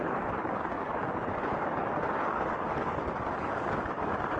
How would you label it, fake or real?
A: fake